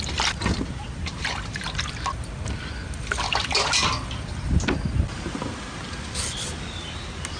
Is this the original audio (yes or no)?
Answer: yes